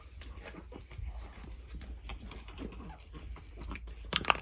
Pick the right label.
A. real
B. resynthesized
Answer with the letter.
B